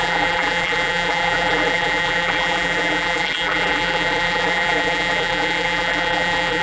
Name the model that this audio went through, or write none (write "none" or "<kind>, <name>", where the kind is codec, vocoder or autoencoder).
vocoder, BigVGAN v2